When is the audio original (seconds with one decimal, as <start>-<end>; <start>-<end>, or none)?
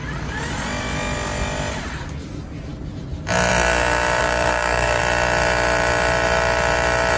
0.0-4.2; 5.0-7.2